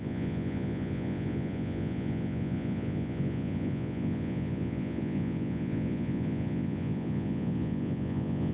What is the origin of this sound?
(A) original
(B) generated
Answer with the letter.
B